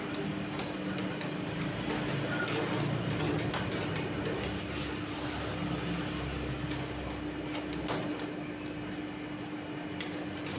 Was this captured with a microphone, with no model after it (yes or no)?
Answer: yes